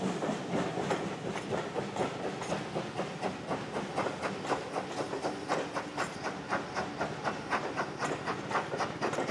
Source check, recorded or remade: recorded